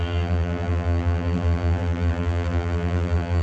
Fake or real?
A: fake